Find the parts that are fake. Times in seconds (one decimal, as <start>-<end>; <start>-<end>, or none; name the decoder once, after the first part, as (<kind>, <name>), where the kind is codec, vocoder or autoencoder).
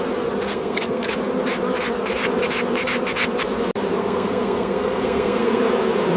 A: 0.5-1.1 (codec, SNAC); 4.0-5.6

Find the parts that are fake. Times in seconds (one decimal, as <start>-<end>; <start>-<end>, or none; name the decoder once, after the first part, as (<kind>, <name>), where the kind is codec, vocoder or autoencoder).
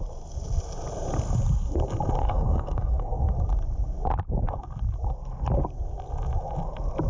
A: 2.2-3.3 (codec, SNAC)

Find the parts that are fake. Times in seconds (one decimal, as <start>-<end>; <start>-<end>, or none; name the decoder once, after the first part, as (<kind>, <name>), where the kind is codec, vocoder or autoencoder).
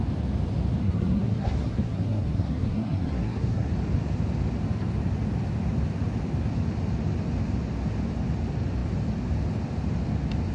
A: 0.8-3.7 (codec, SNAC)